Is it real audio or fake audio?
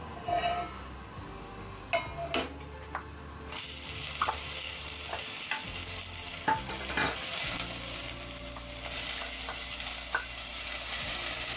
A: real